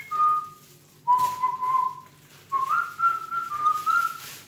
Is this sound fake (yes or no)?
no